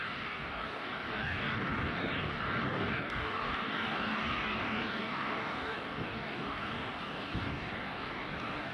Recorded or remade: remade